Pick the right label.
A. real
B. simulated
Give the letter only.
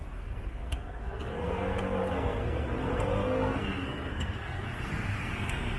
B